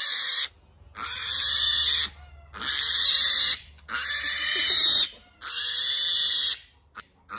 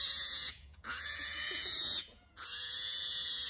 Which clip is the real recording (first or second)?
first